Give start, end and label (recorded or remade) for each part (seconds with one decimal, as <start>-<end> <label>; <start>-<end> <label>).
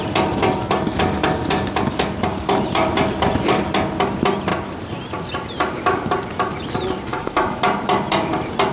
0.0-7.1 recorded; 7.1-7.6 remade; 7.6-8.7 recorded